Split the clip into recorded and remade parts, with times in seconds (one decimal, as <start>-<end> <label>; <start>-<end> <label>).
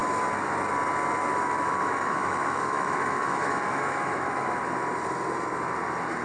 0.0-1.2 recorded; 1.2-4.6 remade; 4.6-6.2 recorded